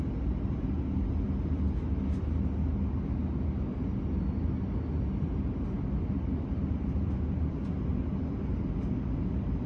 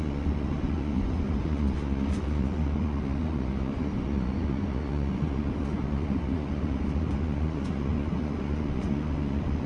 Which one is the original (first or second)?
first